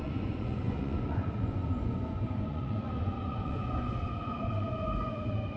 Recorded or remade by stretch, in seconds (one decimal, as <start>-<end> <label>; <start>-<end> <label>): 0.0-5.6 remade